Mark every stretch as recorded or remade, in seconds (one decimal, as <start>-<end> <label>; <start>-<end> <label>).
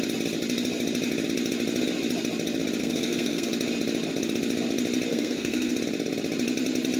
0.0-2.8 recorded; 2.8-3.5 remade; 3.5-5.1 recorded; 5.1-5.7 remade; 5.7-7.0 recorded